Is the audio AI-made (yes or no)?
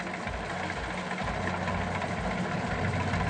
no